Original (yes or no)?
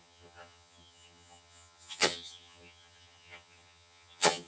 no